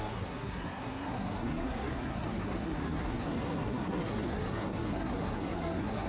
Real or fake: fake